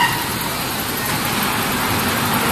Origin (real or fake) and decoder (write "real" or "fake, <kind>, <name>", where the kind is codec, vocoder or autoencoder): real